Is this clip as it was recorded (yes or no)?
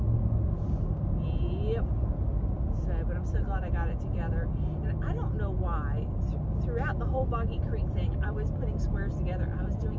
yes